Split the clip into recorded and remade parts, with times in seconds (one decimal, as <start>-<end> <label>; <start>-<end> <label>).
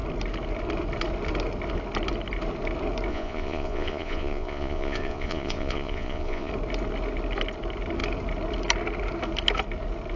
0.0-3.1 recorded; 3.1-6.5 remade; 6.5-10.2 recorded